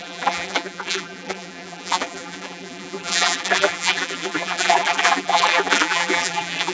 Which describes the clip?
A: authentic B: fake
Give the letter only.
B